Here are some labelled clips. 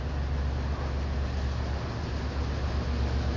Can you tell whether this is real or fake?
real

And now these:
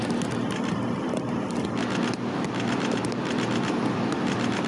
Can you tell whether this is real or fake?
fake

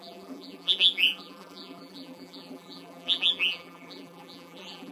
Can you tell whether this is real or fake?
fake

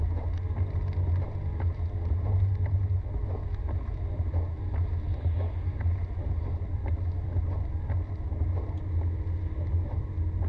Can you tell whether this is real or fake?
real